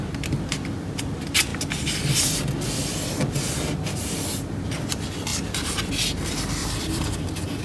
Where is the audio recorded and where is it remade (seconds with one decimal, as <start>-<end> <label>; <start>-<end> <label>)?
0.0-5.3 recorded; 5.3-5.9 remade; 5.9-6.6 recorded; 6.6-7.6 remade